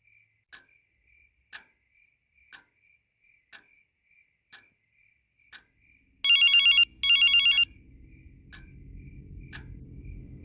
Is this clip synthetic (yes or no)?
no